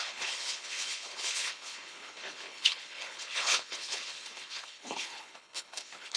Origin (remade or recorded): remade